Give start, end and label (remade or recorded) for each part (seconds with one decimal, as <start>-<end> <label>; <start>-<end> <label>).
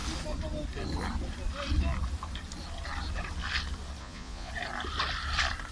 0.0-4.0 recorded; 4.0-4.5 remade; 4.5-5.7 recorded